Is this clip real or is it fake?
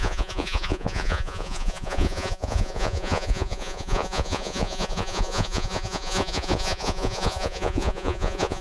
fake